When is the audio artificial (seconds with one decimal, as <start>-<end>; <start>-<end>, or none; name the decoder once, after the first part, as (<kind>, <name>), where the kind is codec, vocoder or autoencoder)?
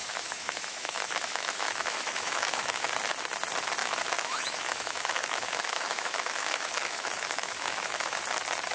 0.0-2.9 (autoencoder, DAC-VAE); 3.8-8.2